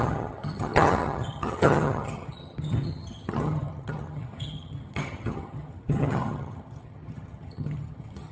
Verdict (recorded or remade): remade